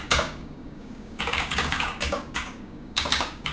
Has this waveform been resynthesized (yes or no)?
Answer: yes